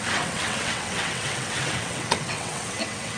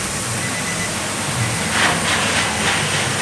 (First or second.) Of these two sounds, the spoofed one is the first